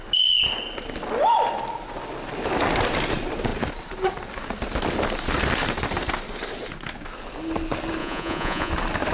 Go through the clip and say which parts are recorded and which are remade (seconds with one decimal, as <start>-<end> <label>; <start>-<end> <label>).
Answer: 0.0-8.0 recorded; 8.0-8.7 remade; 8.7-9.1 recorded

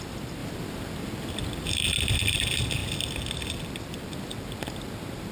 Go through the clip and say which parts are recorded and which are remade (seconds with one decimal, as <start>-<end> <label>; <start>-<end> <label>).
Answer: 0.0-5.3 recorded

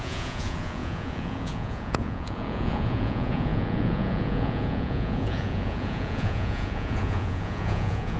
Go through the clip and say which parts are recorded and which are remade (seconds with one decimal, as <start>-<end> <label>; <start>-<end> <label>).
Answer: 0.0-8.2 remade

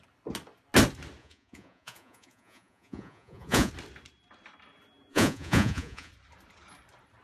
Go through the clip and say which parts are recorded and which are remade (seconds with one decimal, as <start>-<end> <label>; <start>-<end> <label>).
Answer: 0.0-1.2 recorded; 1.2-3.7 remade; 3.7-5.1 recorded; 5.1-6.1 remade; 6.1-7.2 recorded

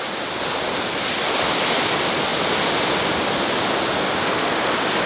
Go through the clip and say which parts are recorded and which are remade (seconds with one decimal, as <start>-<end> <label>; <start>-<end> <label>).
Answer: 0.0-5.1 recorded

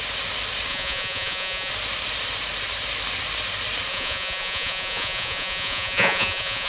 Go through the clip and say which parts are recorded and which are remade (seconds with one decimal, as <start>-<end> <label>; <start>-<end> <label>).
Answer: 0.0-0.7 recorded; 0.7-1.7 remade; 1.7-3.9 recorded; 3.9-6.7 remade

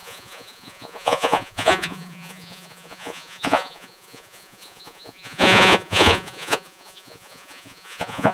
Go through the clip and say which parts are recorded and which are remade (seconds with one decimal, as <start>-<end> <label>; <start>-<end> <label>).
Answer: 0.0-8.3 remade